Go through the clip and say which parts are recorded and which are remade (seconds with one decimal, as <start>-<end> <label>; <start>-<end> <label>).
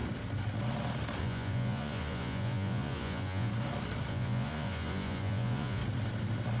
0.0-1.2 recorded; 1.2-3.5 remade; 3.5-4.1 recorded; 4.1-5.8 remade; 5.8-6.6 recorded